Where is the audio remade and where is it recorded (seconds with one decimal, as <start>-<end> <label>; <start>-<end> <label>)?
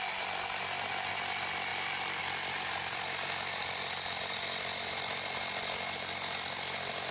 0.0-7.1 recorded